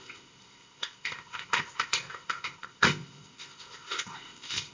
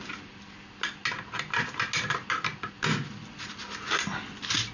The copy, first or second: first